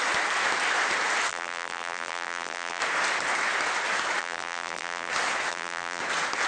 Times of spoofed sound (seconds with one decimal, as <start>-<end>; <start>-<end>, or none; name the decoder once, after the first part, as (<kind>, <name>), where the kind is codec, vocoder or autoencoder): 1.3-2.8 (vocoder, BigVGAN v2); 4.2-5.1; 5.5-6.0